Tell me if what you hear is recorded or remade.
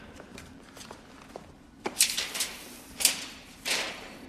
remade